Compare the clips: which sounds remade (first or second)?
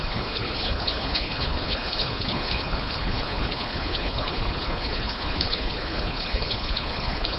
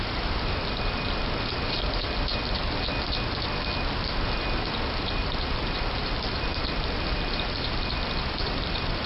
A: first